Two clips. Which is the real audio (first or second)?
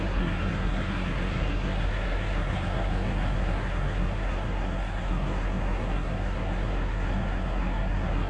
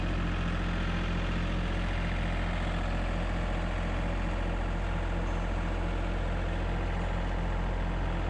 second